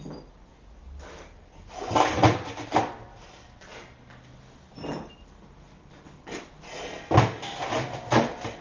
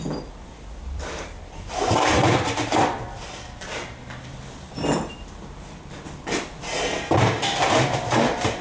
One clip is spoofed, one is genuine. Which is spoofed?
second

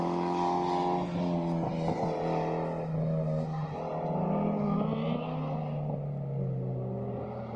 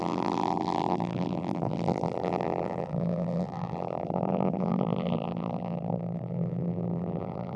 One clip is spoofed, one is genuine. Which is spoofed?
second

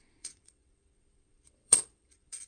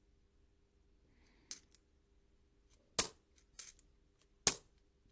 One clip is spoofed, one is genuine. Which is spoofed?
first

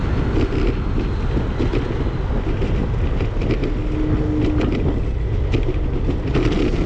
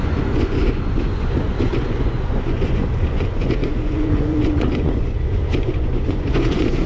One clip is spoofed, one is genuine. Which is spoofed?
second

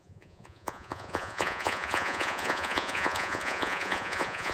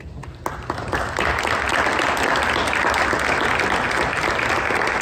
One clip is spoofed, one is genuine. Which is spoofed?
first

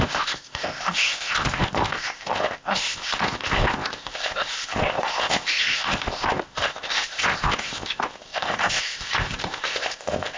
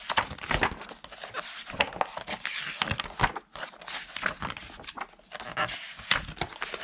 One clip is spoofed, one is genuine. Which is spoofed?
first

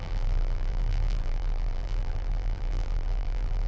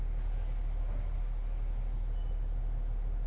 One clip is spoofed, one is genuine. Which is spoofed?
first